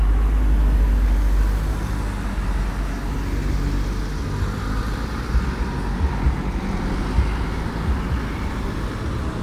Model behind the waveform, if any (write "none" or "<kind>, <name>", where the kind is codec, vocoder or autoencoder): none